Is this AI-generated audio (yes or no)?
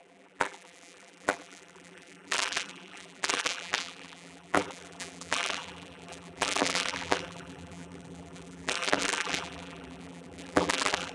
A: yes